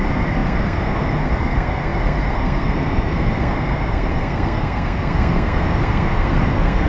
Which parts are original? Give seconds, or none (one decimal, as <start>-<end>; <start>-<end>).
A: none